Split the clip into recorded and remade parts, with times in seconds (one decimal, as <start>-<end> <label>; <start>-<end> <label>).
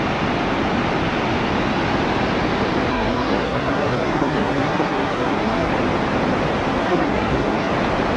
0.0-2.9 recorded; 2.9-5.7 remade; 5.7-6.8 recorded; 6.8-7.7 remade; 7.7-8.2 recorded